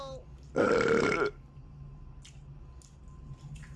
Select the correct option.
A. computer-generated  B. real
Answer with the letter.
B